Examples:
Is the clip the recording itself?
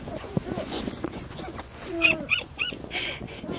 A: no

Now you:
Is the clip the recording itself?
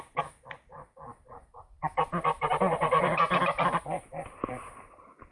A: yes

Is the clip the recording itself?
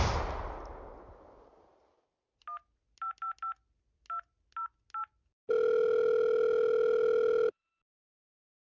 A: yes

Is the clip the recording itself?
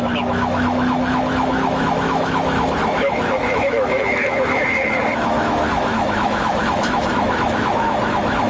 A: no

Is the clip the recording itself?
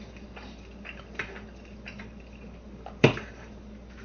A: no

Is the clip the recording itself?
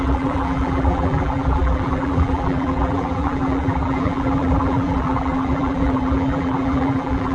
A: no